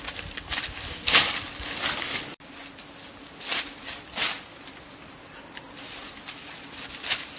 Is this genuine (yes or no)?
yes